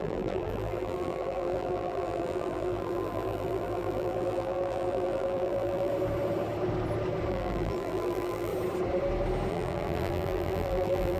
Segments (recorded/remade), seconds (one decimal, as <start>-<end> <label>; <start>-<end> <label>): 0.0-5.9 remade; 5.9-7.3 recorded; 7.3-8.5 remade; 8.5-9.5 recorded; 9.5-11.2 remade